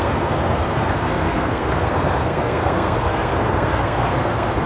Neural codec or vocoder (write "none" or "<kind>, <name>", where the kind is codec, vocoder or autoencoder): codec, SNAC